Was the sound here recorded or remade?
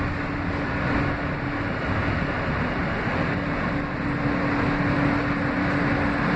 recorded